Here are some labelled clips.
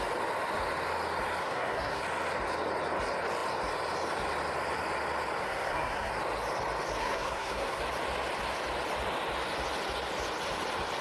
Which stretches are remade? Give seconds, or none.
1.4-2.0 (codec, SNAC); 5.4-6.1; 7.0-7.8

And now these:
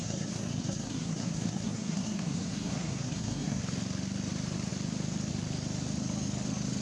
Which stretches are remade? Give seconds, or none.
0.0-3.6 (codec, SNAC)

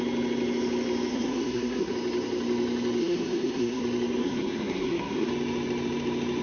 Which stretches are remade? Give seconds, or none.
1.1-1.9 (codec, SNAC); 3.0-3.8; 4.2-5.3

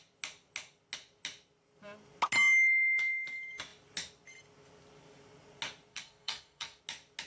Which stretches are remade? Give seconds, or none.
5.9-6.8 (codec, SNAC)